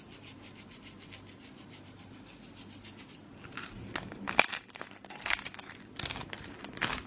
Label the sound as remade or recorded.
recorded